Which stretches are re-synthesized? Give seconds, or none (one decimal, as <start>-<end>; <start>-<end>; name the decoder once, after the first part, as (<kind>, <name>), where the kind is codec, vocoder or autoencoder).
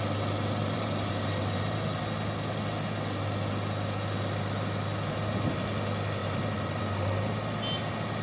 0.6-2.0 (vocoder, BigVGAN v2); 6.2-6.8